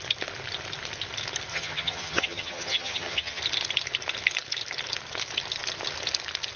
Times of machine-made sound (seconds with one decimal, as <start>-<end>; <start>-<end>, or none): 1.5-3.4